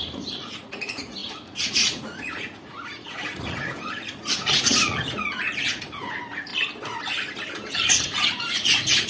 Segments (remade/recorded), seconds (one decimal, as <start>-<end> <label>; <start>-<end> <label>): 0.0-6.5 remade; 6.5-7.7 recorded; 7.7-9.1 remade